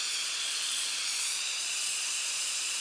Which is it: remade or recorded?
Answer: remade